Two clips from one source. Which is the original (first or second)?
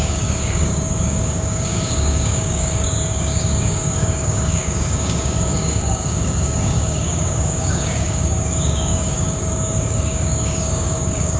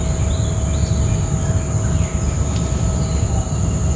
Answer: second